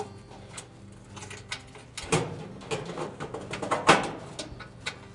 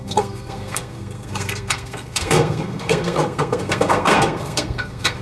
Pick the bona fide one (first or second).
first